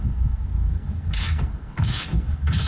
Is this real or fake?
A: fake